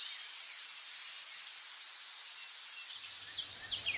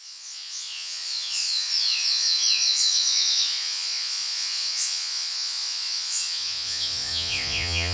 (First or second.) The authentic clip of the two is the first